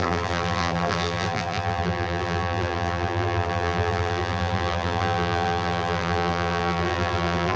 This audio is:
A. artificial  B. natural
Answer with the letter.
A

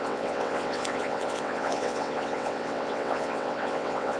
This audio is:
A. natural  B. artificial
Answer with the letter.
B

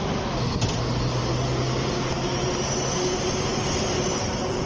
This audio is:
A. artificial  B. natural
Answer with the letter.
B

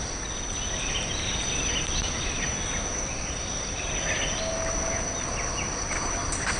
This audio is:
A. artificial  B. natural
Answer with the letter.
B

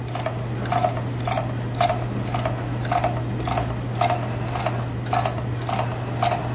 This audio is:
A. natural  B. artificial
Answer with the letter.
A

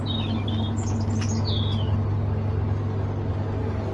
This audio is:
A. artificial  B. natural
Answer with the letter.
B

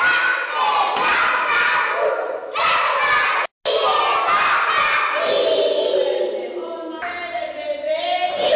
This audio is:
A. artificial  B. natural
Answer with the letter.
B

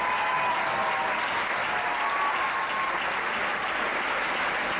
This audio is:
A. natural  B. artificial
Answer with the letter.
A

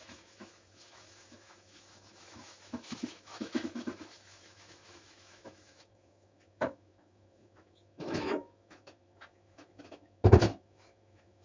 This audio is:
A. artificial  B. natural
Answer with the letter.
A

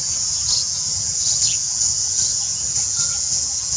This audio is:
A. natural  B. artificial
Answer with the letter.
B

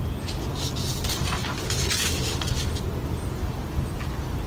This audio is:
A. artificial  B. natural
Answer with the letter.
B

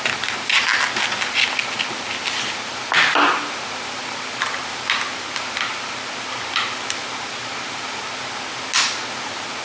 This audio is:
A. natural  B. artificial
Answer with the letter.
A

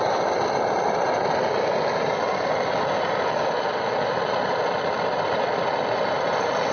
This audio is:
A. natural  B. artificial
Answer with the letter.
B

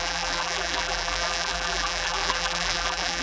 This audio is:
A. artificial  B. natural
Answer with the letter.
A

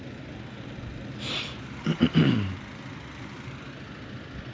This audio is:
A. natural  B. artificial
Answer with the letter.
A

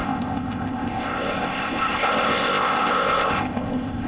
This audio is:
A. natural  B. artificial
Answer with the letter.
B